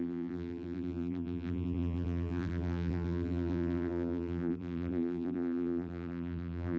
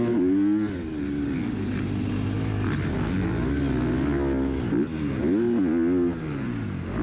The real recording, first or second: second